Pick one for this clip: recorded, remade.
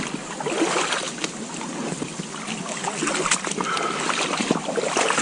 recorded